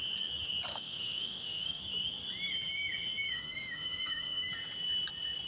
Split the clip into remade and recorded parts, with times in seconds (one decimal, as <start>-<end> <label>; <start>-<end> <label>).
0.0-0.7 recorded; 0.7-1.8 remade; 1.8-3.2 recorded; 3.2-4.5 remade; 4.5-5.5 recorded